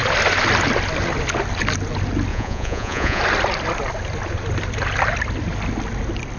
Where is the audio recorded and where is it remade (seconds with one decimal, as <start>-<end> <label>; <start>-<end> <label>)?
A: 0.0-2.3 recorded; 2.3-3.2 remade; 3.2-6.4 recorded